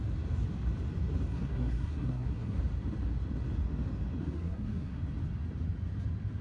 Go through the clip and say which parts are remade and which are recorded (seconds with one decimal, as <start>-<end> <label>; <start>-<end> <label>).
0.0-1.3 recorded; 1.3-2.6 remade; 2.6-4.2 recorded; 4.2-5.0 remade; 5.0-6.4 recorded